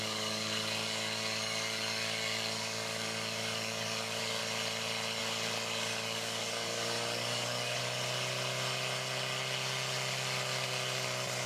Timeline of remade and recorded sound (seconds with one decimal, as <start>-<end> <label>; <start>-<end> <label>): 0.0-4.4 remade; 4.4-5.2 recorded; 5.2-7.8 remade; 7.8-11.5 recorded